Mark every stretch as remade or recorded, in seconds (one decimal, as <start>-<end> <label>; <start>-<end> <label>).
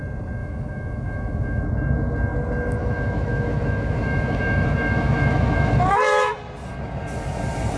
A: 0.0-0.4 recorded; 0.4-1.6 remade; 1.6-2.8 recorded; 2.8-6.3 remade; 6.3-7.8 recorded